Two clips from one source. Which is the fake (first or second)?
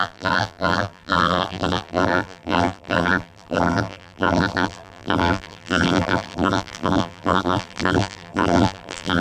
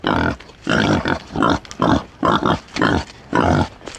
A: first